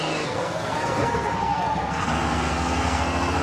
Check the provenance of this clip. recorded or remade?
remade